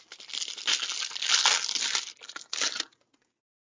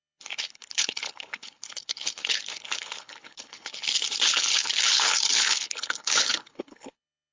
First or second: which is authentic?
first